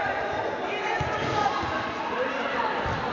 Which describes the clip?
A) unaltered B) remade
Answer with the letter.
A